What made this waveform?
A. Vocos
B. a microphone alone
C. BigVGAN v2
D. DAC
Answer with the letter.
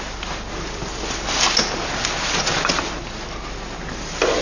B